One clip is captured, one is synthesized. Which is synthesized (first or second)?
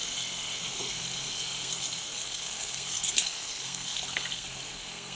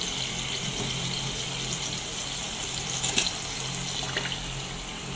first